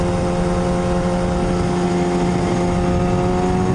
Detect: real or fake real